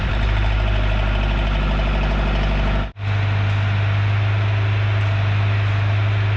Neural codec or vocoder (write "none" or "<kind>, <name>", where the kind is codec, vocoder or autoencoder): none